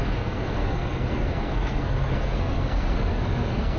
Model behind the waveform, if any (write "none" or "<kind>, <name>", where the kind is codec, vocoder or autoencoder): codec, SNAC